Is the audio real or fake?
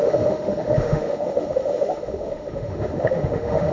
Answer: fake